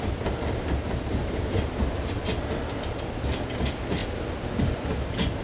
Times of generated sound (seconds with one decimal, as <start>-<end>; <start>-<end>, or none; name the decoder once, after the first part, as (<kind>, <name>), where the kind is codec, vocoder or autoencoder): 1.2-2.0 (vocoder, BigVGAN v2)